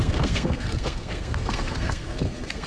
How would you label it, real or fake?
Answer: fake